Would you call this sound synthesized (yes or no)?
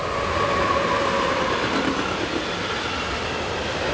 no